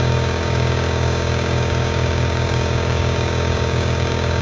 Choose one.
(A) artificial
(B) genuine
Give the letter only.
A